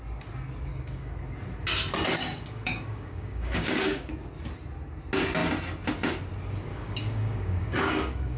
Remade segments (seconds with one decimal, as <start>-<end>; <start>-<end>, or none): 0.7-1.2; 2.2-4.1; 6.7-8.4